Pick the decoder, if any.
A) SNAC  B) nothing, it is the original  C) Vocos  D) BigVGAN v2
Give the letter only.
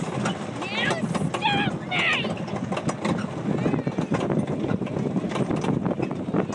B